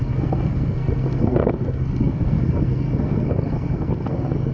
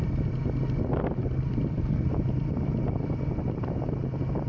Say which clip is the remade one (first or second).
first